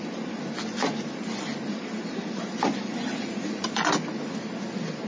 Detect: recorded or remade recorded